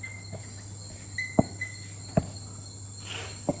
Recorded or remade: recorded